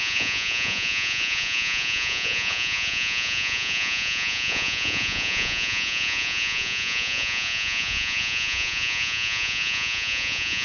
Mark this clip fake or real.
fake